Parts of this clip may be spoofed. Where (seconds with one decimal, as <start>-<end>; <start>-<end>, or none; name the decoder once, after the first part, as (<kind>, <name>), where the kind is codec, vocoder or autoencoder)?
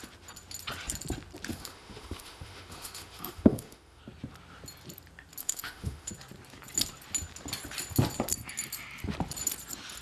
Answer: 1.5-4.0 (autoencoder, DAC-VAE); 5.4-6.1